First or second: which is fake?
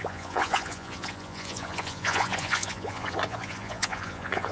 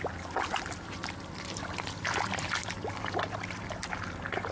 first